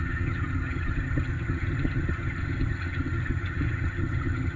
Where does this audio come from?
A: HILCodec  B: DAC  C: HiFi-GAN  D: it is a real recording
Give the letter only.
C